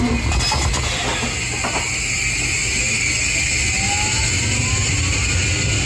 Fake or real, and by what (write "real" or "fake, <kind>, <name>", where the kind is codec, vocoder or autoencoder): real